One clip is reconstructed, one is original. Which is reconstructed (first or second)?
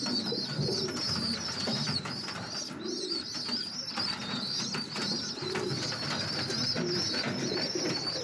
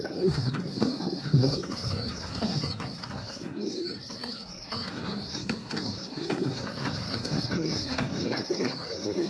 second